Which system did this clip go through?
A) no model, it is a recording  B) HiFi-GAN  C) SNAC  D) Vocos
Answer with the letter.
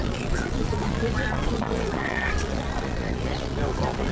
D